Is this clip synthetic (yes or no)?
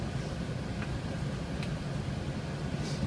no